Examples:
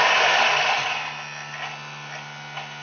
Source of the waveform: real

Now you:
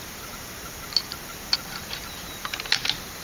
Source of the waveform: fake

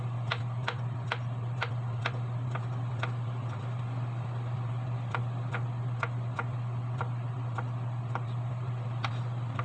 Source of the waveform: real